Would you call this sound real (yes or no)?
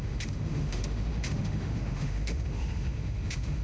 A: no